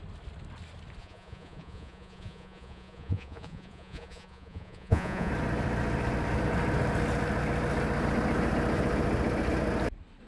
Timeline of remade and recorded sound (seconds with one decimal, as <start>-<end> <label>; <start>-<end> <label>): 0.0-1.0 recorded; 1.0-5.3 remade; 5.3-10.3 recorded